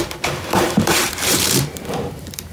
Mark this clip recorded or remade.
remade